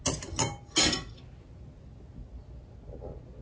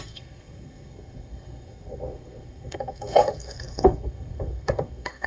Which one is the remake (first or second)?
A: second